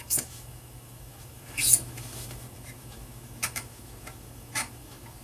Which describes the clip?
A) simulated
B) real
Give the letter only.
A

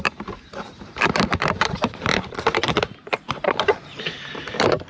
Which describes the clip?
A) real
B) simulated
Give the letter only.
B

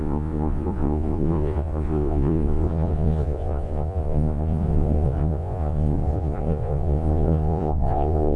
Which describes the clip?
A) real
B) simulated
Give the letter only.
B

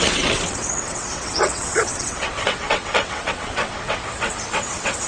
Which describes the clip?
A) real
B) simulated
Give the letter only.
B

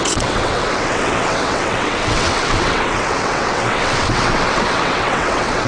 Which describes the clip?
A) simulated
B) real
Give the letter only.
A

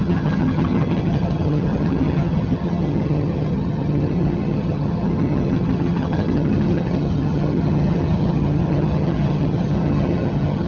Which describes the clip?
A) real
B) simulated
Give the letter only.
B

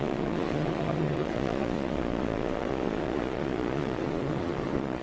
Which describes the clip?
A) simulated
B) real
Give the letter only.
A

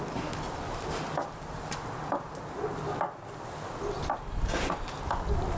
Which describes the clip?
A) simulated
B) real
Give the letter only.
B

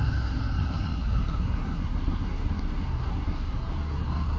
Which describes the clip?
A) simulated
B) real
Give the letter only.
A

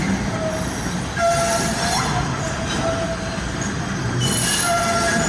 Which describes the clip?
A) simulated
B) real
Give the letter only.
B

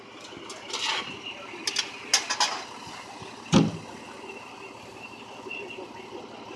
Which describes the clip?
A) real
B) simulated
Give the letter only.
A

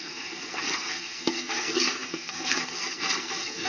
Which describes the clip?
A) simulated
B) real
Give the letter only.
A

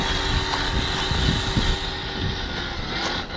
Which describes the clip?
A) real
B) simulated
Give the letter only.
A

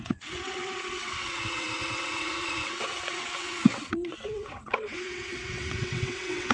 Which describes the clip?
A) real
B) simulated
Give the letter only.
B